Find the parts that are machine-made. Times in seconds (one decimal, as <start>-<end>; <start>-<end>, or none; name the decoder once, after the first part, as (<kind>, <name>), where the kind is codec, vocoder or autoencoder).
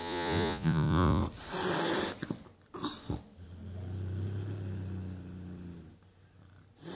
0.0-1.2 (vocoder, Vocos)